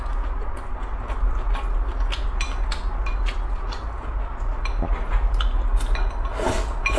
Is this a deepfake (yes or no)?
no